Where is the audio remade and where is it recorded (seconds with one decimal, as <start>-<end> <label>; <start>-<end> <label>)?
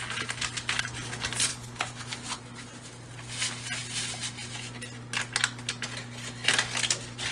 0.0-1.5 recorded; 1.5-2.4 remade; 2.4-7.3 recorded